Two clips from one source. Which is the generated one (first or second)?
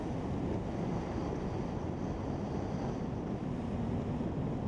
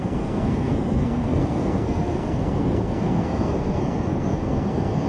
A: second